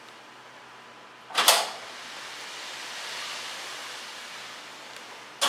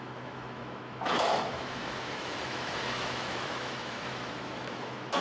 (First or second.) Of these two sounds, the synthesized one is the second